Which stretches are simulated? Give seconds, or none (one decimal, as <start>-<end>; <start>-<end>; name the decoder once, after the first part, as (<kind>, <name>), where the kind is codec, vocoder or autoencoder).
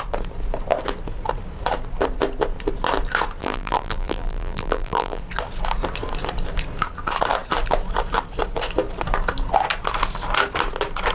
3.4-5.2 (vocoder, BigVGAN v2)